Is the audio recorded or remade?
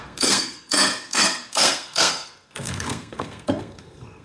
remade